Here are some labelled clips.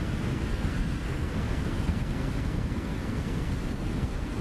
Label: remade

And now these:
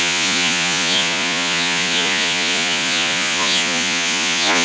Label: remade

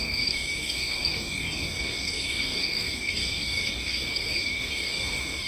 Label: remade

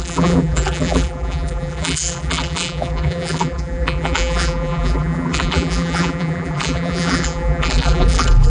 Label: remade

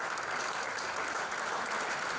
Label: recorded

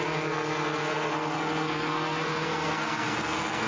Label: remade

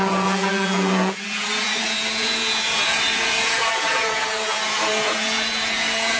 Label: remade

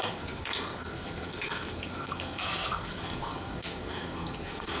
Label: remade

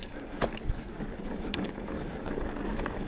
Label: remade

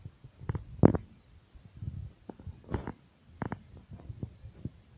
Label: recorded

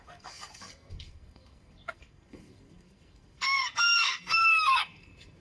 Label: remade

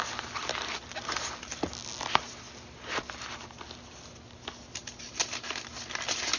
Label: recorded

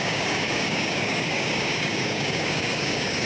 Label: remade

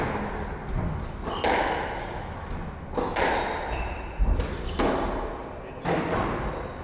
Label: recorded